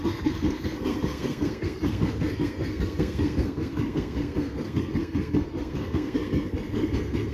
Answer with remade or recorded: remade